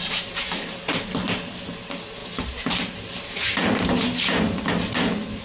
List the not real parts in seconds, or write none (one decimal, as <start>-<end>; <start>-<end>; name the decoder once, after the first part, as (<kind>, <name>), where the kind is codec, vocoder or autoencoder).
none